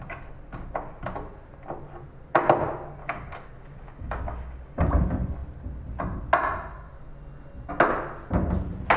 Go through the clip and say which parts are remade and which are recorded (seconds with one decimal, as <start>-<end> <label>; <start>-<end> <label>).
0.0-3.0 recorded; 3.0-4.9 remade; 4.9-9.0 recorded